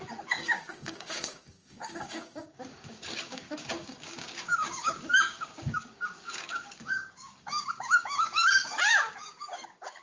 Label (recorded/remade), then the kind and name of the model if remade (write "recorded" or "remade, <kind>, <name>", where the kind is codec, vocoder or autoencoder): remade, codec, DAC